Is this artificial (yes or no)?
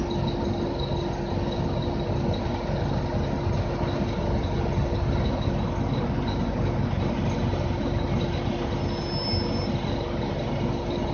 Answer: no